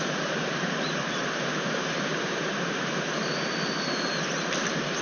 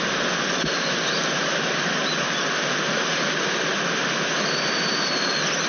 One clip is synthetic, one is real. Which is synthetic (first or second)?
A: first